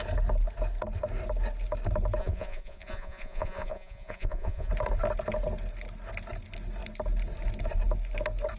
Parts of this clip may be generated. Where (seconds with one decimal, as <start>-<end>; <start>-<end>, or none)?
2.2-4.7